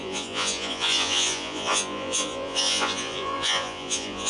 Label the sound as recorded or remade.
remade